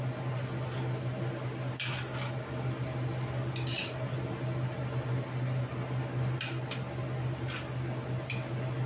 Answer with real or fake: real